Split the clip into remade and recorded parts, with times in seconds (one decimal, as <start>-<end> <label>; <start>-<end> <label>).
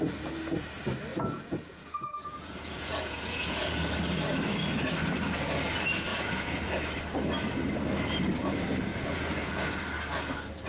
0.0-1.1 recorded; 1.1-3.7 remade; 3.7-6.1 recorded; 6.1-6.6 remade; 6.6-8.9 recorded; 8.9-9.8 remade; 9.8-10.7 recorded